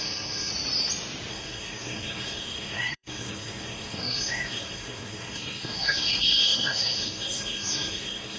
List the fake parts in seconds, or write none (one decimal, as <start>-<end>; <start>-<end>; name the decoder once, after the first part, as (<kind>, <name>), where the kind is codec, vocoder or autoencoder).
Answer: 0.0-0.5 (codec, SNAC); 1.3-8.4